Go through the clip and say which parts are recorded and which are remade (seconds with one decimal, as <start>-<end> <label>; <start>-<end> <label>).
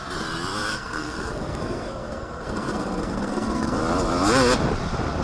0.0-0.7 recorded; 0.7-3.8 remade; 3.8-5.2 recorded